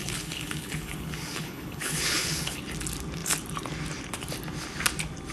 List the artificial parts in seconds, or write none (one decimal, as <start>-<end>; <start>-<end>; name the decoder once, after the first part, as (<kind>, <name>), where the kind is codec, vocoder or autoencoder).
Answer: 0.0-2.6 (codec, HILCodec)